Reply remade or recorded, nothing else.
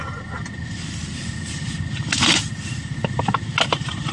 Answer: recorded